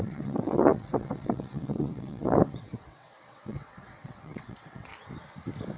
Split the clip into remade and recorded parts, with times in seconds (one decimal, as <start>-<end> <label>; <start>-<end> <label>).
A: 0.0-4.9 remade; 4.9-5.8 recorded